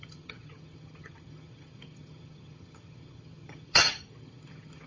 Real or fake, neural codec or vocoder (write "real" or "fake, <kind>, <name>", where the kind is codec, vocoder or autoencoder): fake, vocoder, HiFi-GAN